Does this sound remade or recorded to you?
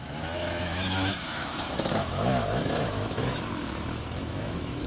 remade